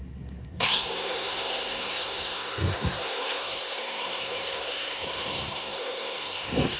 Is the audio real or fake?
fake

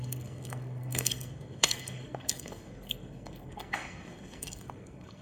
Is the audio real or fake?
fake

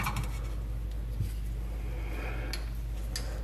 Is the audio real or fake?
real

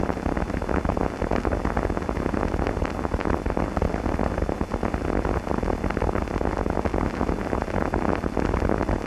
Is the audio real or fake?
real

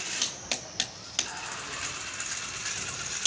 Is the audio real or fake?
real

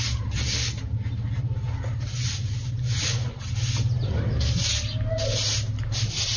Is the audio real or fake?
real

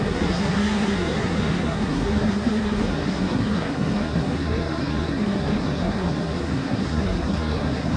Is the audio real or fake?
fake